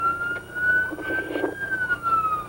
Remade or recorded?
recorded